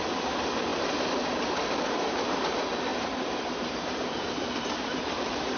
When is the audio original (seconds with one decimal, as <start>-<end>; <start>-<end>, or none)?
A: 0.0-0.7; 2.4-2.9